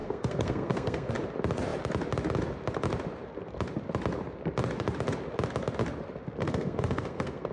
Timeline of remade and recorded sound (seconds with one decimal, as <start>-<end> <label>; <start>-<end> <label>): 0.0-1.1 remade; 1.1-6.4 recorded; 6.4-7.5 remade